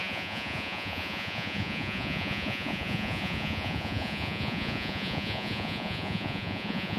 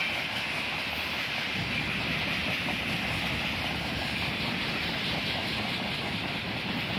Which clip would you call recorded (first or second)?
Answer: second